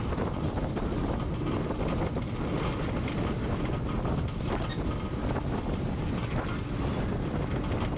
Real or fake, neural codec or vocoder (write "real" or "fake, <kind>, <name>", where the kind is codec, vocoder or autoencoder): real